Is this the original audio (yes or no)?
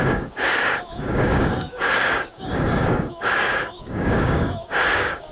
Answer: no